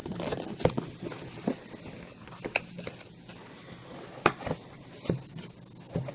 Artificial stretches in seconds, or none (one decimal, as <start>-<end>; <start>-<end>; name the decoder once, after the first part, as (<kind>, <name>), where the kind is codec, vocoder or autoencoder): 0.0-1.8 (vocoder, BigVGAN v2)